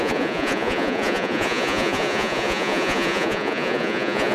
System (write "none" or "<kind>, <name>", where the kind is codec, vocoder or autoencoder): vocoder, Vocos